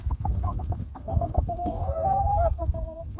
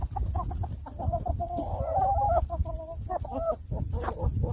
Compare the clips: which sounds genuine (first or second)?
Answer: second